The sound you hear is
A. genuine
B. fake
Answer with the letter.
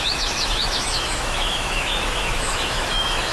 B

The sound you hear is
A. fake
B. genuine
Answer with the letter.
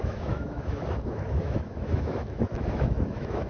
A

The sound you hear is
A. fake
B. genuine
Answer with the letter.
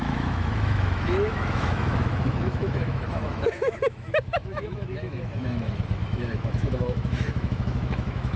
A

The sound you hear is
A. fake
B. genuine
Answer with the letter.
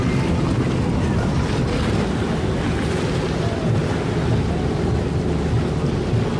B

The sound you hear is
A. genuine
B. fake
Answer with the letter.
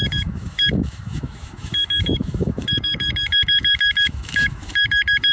B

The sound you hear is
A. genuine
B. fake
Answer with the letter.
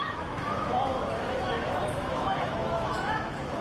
B